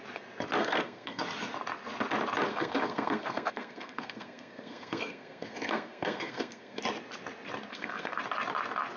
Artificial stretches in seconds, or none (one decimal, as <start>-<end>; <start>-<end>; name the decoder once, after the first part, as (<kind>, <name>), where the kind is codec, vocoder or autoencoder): 0.6-1.2 (codec, SNAC); 2.5-6.8; 7.7-8.2